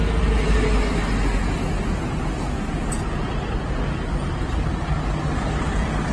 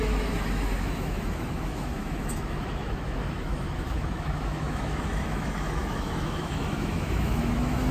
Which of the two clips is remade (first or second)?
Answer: second